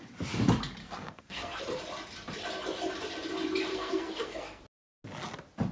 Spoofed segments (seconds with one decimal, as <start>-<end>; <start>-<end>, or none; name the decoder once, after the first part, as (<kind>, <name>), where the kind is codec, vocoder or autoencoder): 0.8-1.6 (codec, SNAC); 3.7-4.6

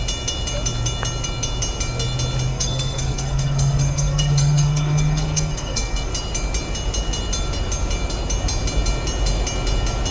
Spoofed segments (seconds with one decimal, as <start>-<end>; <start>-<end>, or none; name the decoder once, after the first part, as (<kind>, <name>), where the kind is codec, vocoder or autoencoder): 2.5-6.1 (codec, SNAC)

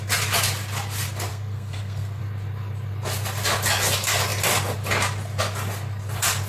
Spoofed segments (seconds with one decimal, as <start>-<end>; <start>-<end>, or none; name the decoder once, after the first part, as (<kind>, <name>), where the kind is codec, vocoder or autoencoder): 1.3-2.2 (codec, SNAC)

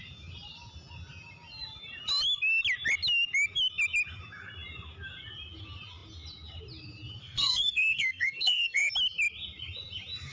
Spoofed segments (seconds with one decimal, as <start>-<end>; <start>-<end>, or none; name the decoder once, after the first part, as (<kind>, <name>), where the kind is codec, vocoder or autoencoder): 7.2-8.9 (codec, SNAC)